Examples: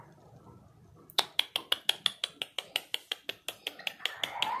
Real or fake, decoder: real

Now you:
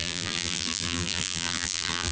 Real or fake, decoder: fake, vocoder, BigVGAN v2